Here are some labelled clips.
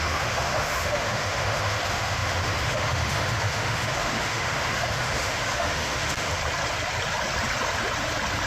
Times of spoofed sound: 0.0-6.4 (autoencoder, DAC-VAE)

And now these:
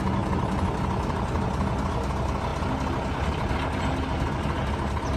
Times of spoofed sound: none

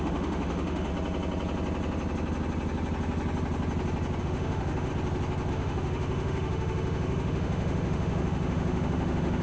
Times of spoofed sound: 0.0-0.9 (autoencoder, DAC-VAE); 4.2-4.9; 5.5-9.4

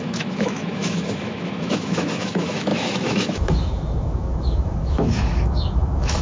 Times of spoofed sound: 0.0-6.2 (autoencoder, DAC-VAE)

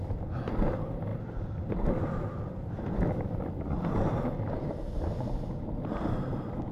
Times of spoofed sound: none

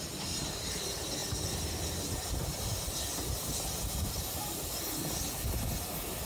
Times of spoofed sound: none

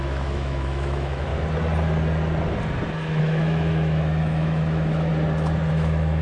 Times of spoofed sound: 0.0-1.3 (autoencoder, DAC-VAE); 3.2-5.1; 5.7-6.2

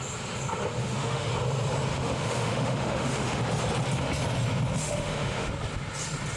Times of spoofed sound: 0.8-1.3 (autoencoder, DAC-VAE); 1.9-3.4; 4.8-5.5